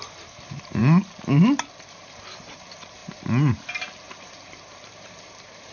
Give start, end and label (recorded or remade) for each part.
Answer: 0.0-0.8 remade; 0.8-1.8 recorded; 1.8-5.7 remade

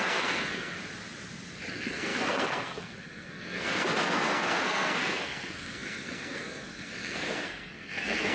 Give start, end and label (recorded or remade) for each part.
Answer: 0.0-0.8 remade; 0.8-1.7 recorded; 1.7-8.3 remade

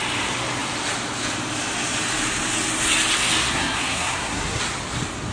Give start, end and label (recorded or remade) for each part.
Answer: 0.0-3.4 recorded; 3.4-4.6 remade; 4.6-5.3 recorded